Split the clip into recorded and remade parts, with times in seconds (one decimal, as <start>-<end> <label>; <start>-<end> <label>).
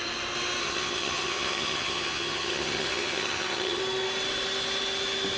0.0-0.6 recorded; 0.6-3.8 remade; 3.8-5.4 recorded